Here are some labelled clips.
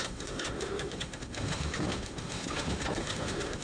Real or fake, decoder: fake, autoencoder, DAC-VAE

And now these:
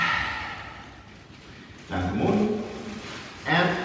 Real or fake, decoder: real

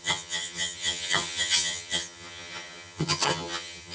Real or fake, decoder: fake, vocoder, HiFi-GAN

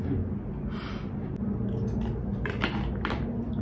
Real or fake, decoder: real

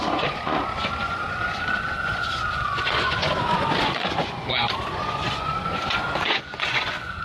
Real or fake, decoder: fake, vocoder, Vocos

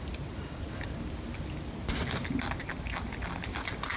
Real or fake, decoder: real